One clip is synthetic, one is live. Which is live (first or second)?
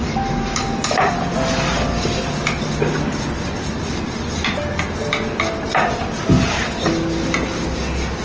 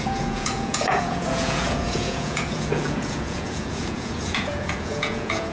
first